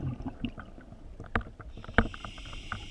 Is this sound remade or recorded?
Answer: recorded